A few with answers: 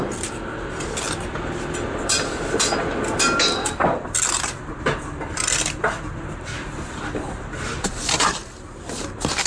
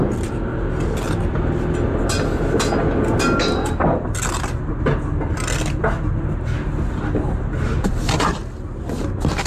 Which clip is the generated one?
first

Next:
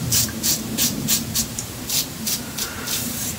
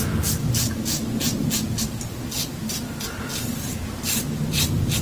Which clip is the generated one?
first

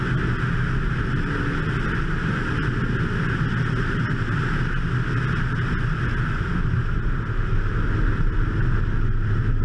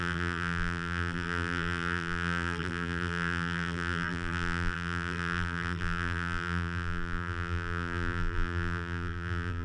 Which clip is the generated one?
second